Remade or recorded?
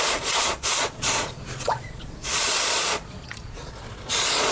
remade